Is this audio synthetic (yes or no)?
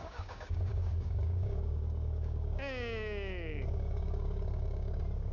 yes